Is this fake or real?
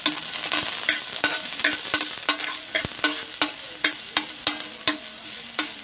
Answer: real